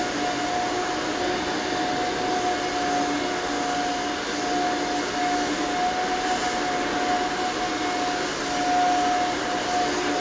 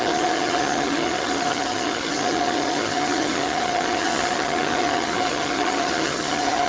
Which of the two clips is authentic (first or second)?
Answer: first